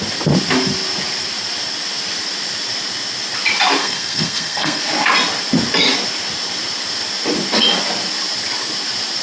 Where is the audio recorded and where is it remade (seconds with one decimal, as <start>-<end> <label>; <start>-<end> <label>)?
0.0-3.8 recorded; 3.8-4.8 remade; 4.8-9.2 recorded